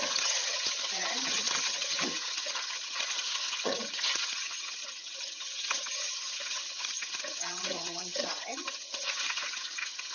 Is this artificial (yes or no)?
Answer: yes